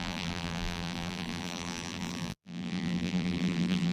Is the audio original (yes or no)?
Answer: no